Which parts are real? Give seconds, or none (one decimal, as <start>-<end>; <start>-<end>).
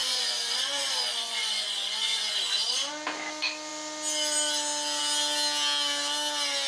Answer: 2.9-6.7